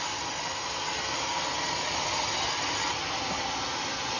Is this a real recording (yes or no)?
yes